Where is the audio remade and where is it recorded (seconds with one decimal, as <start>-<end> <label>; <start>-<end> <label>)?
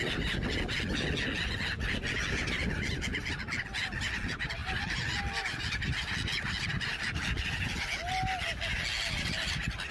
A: 0.0-9.9 recorded